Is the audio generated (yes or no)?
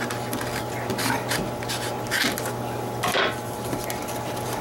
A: no